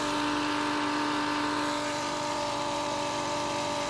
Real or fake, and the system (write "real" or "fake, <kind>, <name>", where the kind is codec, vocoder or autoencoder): fake, vocoder, BigVGAN v2